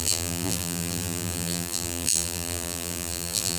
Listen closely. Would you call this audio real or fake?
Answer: fake